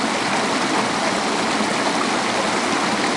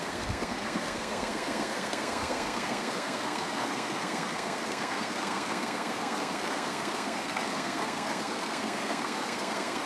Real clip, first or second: first